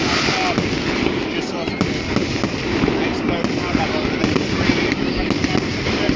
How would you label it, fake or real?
real